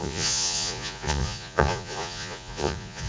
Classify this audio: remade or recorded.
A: remade